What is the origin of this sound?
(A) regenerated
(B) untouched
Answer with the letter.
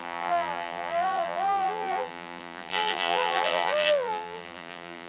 A